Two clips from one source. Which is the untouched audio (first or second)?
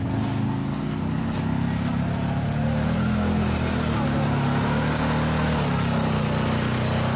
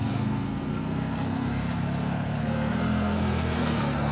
first